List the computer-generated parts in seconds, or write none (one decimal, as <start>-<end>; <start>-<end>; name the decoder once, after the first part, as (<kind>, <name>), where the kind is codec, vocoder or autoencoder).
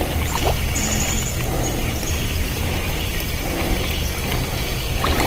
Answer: 1.8-3.1 (vocoder, BigVGAN v2)